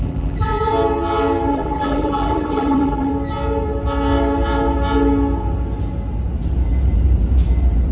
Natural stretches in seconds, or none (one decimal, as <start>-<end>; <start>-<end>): 0.7-1.5; 3.1-7.9